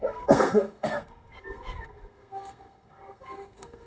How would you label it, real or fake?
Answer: fake